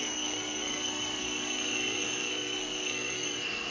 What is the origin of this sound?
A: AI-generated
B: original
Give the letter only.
A